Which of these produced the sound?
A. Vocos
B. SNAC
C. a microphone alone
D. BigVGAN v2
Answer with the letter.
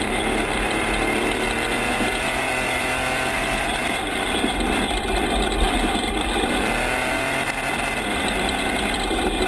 D